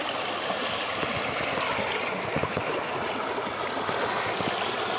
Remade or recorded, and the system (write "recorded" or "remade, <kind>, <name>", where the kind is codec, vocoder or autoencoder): recorded